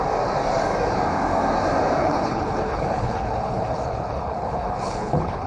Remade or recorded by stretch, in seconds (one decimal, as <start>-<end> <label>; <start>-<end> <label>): 0.0-2.0 recorded; 2.0-5.5 remade